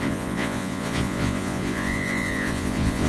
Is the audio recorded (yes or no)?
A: no